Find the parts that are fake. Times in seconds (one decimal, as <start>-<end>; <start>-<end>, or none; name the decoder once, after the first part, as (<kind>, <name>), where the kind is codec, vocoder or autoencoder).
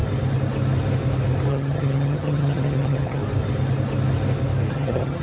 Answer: 1.5-3.2 (vocoder, HiFi-GAN); 4.7-5.2